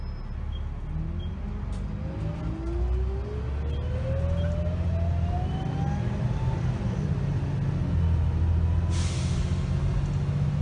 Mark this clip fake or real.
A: real